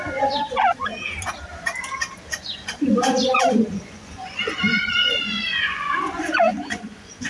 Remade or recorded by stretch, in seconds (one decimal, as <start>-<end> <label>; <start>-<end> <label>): 0.0-0.9 remade; 0.9-2.3 recorded; 2.3-7.3 remade